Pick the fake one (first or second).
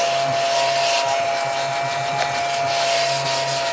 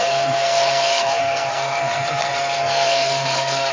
second